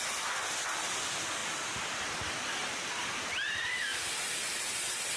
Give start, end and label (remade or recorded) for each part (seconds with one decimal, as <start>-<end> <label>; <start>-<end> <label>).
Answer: 0.0-5.2 recorded